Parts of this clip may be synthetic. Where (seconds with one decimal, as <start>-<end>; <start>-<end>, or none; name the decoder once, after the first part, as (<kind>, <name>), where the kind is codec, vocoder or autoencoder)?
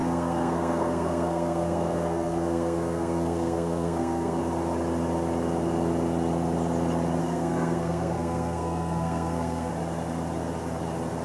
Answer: 0.0-4.4 (codec, SNAC); 7.2-9.7